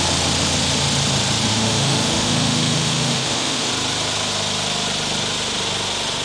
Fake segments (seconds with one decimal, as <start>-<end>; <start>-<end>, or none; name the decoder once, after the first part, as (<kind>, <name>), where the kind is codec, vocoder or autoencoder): 1.5-3.7 (autoencoder, DAC-VAE)